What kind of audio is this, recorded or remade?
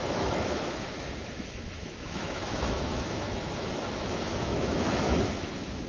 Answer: remade